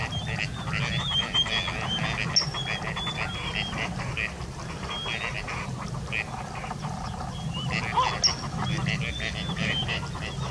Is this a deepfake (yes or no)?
no